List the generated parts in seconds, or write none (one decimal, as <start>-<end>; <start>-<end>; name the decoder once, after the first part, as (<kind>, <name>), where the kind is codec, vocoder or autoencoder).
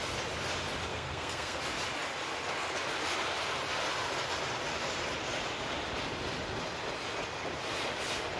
0.9-1.6 (codec, SNAC)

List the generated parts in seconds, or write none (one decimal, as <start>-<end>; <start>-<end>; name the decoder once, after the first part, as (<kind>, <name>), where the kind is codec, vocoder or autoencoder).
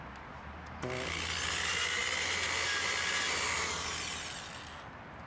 none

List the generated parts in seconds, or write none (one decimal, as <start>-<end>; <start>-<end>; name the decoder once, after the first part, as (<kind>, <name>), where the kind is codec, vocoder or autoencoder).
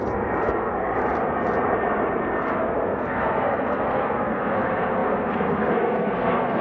0.0-1.0 (codec, SNAC); 2.5-6.6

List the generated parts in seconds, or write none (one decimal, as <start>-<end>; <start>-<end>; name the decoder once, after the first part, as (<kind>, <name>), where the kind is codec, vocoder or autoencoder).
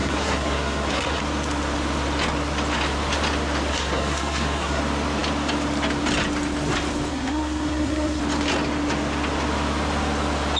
0.0-1.2 (codec, SNAC); 3.7-4.8; 7.1-8.2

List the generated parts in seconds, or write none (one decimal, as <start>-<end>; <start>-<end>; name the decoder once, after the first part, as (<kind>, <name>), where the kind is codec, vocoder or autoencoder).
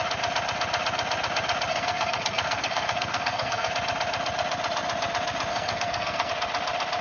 1.7-3.7 (codec, SNAC); 5.5-6.3